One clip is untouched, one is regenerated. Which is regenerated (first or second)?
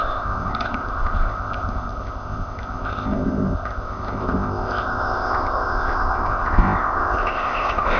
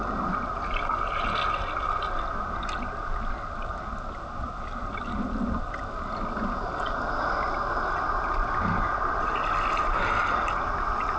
first